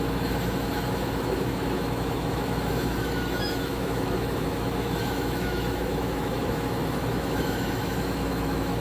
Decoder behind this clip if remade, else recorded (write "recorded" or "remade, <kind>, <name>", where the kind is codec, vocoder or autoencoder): remade, autoencoder, DAC-VAE